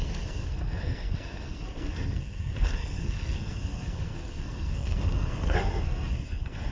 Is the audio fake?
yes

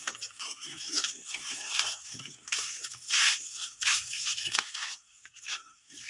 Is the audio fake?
yes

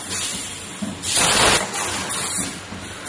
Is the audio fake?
no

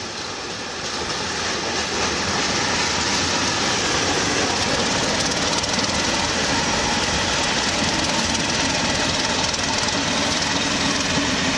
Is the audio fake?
no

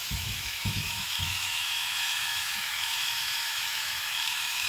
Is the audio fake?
yes